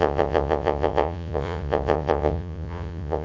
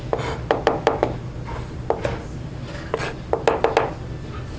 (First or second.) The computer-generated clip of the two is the first